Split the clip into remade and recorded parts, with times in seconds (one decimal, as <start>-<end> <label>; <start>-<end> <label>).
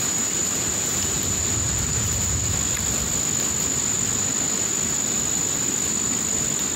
0.0-2.4 remade; 2.4-6.8 recorded